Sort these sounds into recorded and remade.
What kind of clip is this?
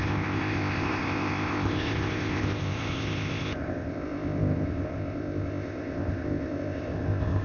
remade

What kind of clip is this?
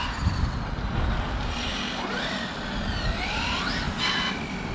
recorded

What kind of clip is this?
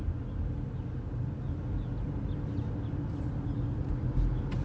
recorded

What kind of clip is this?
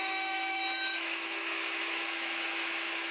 remade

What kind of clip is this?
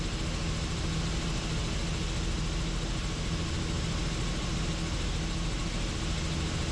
recorded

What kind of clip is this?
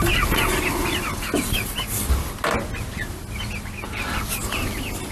recorded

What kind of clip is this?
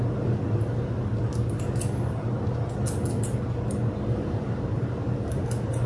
recorded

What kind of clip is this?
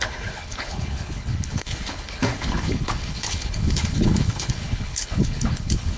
remade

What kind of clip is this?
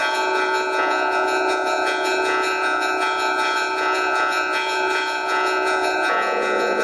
remade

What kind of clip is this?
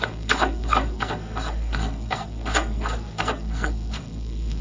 remade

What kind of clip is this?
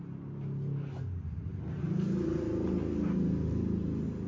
recorded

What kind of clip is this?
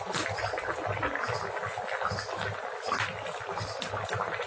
recorded